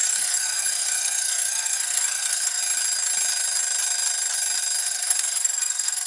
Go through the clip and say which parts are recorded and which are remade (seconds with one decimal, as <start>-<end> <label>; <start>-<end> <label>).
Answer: 0.0-2.6 remade; 2.6-4.8 recorded; 4.8-6.1 remade